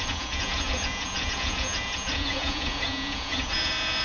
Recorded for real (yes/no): no